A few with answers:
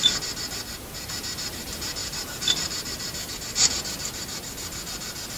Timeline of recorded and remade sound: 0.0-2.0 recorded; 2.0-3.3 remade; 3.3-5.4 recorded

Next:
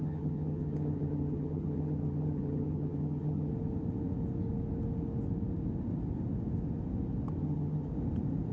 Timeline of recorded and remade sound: 0.0-3.5 remade; 3.5-7.4 recorded; 7.4-7.9 remade; 7.9-8.5 recorded

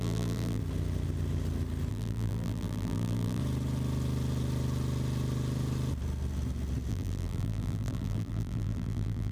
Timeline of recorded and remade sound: 0.0-0.6 remade; 0.6-1.9 recorded; 1.9-3.4 remade; 3.4-6.9 recorded; 6.9-9.3 remade

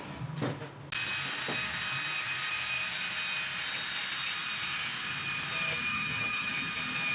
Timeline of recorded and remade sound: 0.0-5.9 recorded; 5.9-6.5 remade; 6.5-7.1 recorded